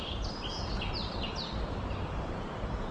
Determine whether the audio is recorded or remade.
recorded